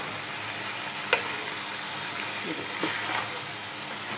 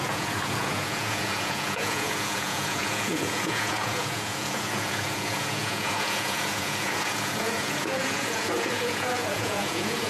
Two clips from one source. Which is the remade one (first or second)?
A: second